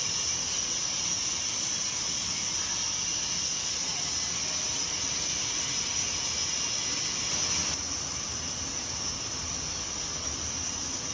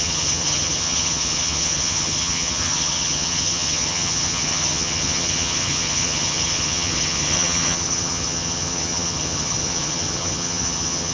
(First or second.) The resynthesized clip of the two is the second